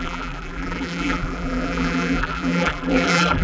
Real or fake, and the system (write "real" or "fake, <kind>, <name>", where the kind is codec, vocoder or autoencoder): fake, vocoder, BigVGAN v2